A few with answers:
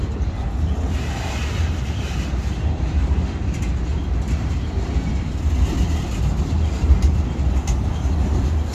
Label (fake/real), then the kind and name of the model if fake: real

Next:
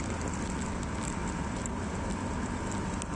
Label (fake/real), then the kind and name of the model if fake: fake, vocoder, BigVGAN v2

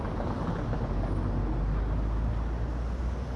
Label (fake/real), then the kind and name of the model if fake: real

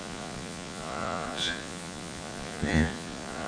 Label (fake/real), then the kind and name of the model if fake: fake, vocoder, Vocos